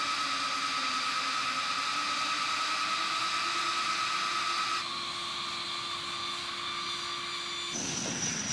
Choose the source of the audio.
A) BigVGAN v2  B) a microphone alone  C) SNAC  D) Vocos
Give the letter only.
B